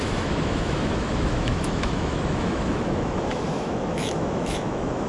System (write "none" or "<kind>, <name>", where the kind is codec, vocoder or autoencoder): autoencoder, DAC-VAE